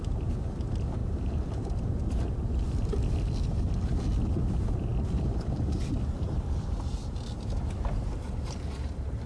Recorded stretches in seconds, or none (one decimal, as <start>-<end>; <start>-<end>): 1.0-1.8; 7.0-8.3